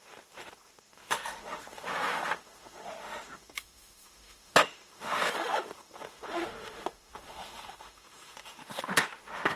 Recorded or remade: remade